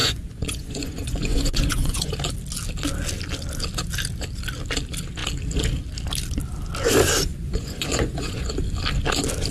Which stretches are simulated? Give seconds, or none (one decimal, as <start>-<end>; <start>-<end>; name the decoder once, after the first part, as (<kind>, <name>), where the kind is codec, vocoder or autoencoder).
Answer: 0.0-2.1 (vocoder, Vocos); 7.3-8.5